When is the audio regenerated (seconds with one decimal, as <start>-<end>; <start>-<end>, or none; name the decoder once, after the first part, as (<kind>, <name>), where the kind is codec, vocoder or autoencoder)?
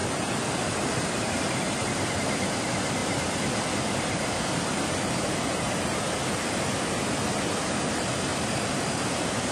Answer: 0.0-1.0 (vocoder, BigVGAN v2); 3.0-6.9; 8.3-8.9